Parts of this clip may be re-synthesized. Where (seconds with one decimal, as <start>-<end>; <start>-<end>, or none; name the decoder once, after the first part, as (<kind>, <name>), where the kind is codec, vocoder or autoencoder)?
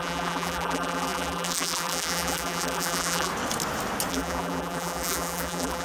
0.0-3.3 (vocoder, BigVGAN v2); 4.1-5.8